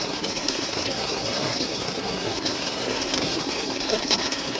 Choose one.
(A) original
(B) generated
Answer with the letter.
B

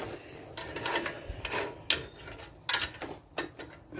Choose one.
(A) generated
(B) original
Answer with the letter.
B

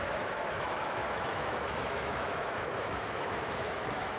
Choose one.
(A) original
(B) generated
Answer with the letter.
B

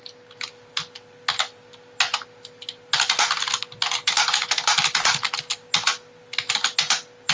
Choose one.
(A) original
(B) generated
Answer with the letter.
A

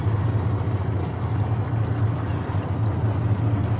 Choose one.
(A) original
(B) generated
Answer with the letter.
A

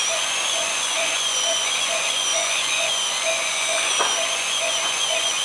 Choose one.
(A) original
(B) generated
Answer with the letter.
B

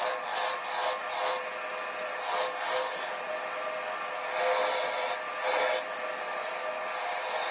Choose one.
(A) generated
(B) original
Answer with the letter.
B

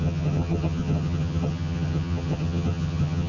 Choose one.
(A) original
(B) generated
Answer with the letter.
B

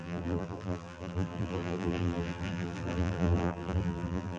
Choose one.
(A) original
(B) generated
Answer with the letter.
B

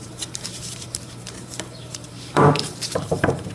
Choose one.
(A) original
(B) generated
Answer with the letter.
B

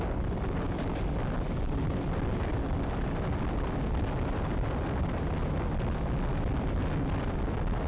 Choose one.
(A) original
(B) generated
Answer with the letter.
A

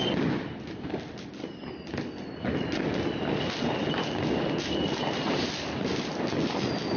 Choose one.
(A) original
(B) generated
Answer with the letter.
A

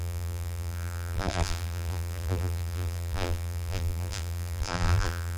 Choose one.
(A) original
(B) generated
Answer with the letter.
B